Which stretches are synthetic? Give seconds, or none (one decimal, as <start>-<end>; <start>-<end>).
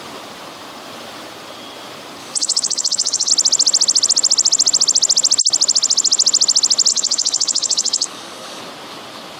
2.2-3.3; 6.9-8.6